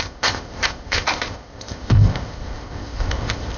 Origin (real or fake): fake